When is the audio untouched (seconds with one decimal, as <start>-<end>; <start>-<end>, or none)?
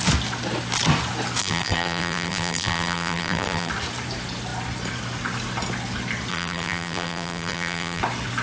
0.0-1.4; 3.7-6.3; 8.0-8.4